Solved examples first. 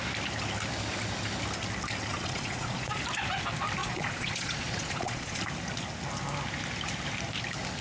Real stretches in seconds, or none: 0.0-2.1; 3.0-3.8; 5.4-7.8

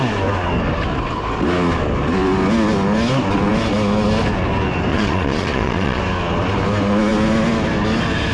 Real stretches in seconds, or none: 0.0-4.9; 6.0-8.3

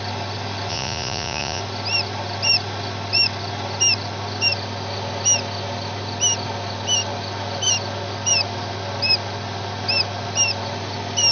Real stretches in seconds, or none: 0.0-0.7; 1.6-11.3